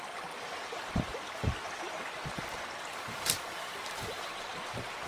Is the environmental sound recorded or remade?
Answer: recorded